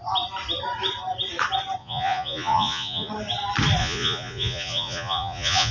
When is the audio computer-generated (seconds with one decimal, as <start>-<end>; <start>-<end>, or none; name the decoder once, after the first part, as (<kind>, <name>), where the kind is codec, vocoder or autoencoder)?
1.8-3.1 (vocoder, Vocos); 3.8-5.7